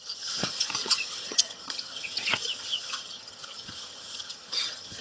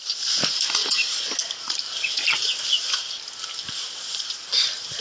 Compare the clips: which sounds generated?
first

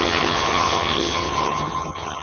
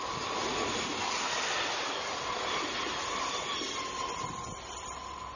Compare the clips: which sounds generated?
first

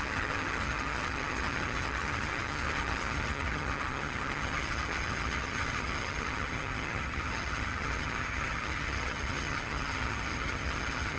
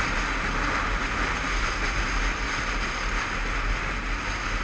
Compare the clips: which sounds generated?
first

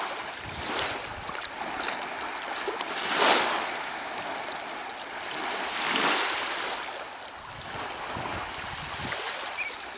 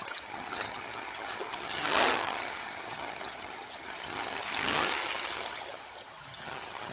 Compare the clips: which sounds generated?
second